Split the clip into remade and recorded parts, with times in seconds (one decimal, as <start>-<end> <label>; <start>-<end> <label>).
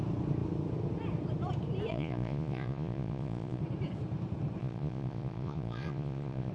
0.0-1.9 recorded; 1.9-3.6 remade; 3.6-4.6 recorded; 4.6-6.5 remade